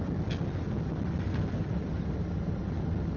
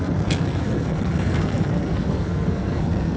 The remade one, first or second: second